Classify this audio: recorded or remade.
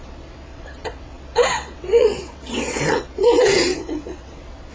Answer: remade